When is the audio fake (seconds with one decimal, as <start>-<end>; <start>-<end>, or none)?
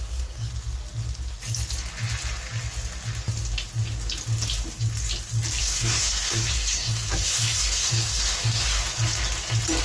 0.0-0.5; 5.6-8.8